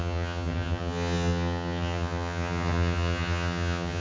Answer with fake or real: fake